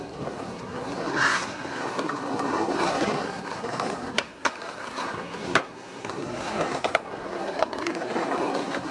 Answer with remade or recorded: remade